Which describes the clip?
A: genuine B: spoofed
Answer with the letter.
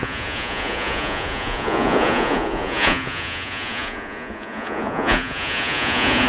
B